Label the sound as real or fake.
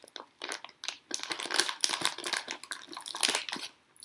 real